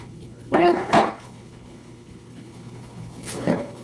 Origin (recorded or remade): remade